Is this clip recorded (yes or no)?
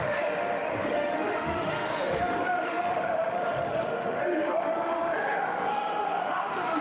no